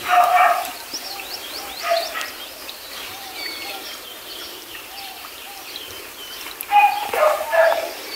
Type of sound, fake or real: fake